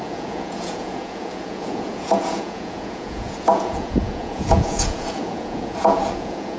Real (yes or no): no